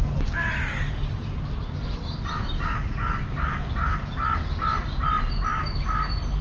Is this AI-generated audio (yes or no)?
no